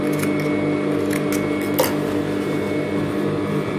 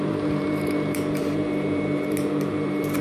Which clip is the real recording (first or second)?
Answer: first